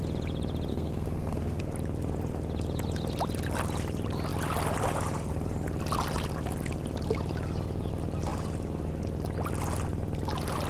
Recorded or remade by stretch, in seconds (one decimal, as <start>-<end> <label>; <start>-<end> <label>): 0.0-0.7 recorded; 0.7-1.6 remade; 1.6-10.7 recorded